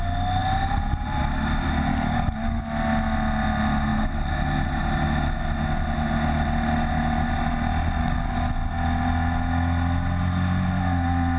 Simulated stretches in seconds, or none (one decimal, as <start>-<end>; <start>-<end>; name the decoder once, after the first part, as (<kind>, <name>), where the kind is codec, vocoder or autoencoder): 1.9-2.6 (codec, DAC); 8.0-8.5